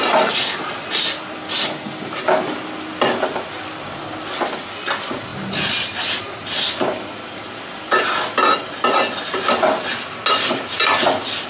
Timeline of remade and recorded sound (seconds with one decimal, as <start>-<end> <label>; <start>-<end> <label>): 0.0-11.5 recorded